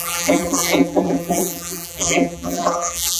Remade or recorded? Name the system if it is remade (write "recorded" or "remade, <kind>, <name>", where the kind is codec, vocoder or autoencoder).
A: remade, vocoder, BigVGAN v2